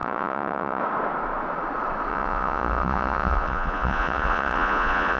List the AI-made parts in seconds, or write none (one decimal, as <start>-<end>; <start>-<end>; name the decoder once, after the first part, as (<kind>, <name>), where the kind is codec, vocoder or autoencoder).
0.0-0.8 (vocoder, Vocos); 2.1-5.2